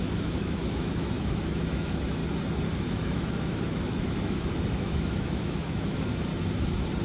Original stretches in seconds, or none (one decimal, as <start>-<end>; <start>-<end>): 2.2-2.8; 6.3-7.0

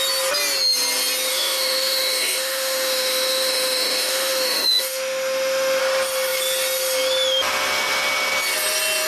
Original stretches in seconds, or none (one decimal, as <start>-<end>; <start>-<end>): 0.0-1.3; 5.8-9.1

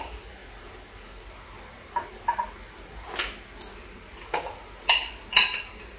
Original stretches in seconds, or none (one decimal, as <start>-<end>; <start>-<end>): 0.0-6.0

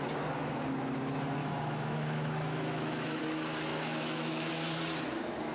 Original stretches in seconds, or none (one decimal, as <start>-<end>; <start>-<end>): 0.0-1.4; 3.2-3.7; 4.5-5.5

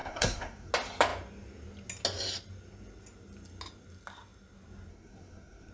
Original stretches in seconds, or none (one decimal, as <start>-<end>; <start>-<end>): 0.7-4.9

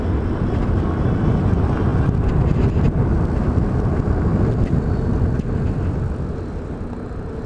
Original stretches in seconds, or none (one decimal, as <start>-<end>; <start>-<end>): 0.0-7.5

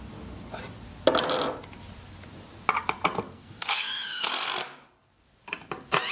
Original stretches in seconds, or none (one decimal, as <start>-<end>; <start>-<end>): 0.0-3.3; 4.5-6.1

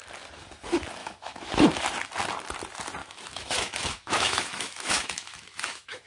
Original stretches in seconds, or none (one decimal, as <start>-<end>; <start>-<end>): 0.0-1.0; 1.5-3.0